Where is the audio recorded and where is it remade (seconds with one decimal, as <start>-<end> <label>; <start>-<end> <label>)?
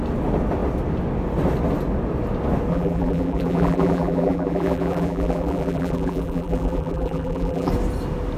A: 0.0-2.7 recorded; 2.7-7.7 remade; 7.7-8.4 recorded